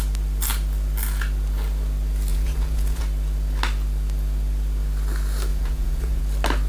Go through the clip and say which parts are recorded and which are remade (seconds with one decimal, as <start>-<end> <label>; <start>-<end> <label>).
0.0-2.3 recorded; 2.3-3.0 remade; 3.0-5.5 recorded; 5.5-6.2 remade; 6.2-6.7 recorded